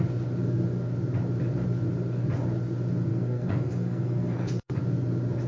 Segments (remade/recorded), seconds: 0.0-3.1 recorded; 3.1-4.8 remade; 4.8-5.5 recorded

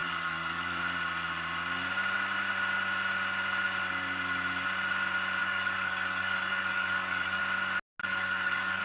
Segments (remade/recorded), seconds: 0.0-0.8 remade; 0.8-5.4 recorded; 5.4-7.4 remade; 7.4-8.0 recorded; 8.0-8.8 remade